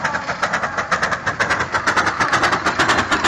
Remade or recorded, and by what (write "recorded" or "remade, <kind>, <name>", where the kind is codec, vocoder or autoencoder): recorded